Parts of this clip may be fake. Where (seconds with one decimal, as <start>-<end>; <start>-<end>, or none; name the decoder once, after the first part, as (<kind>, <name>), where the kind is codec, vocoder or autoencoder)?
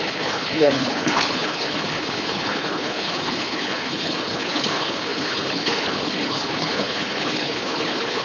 0.0-8.2 (codec, HILCodec)